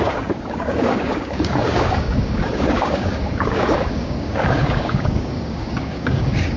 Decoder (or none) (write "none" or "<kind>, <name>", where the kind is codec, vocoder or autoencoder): codec, DAC